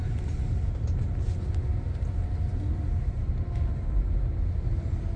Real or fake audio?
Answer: real